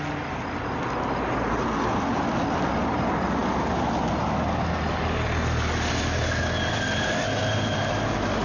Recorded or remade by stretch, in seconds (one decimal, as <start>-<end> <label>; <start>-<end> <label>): 0.0-8.4 recorded